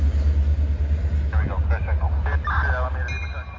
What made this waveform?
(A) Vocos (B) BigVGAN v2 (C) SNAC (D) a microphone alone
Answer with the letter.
D